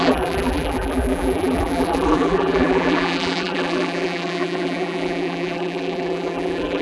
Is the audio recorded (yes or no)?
no